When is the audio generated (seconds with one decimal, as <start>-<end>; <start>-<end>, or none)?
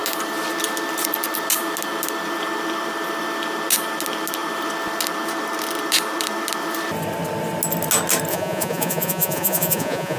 8.3-10.2